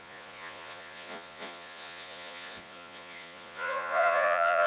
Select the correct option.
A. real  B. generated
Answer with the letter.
B